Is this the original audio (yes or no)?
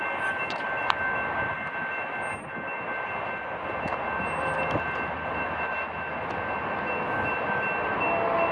yes